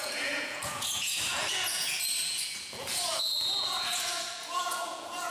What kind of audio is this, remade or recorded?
remade